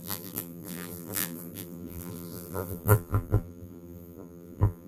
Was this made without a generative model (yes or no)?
no